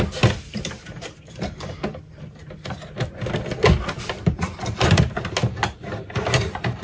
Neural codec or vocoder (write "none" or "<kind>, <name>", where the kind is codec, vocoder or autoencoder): none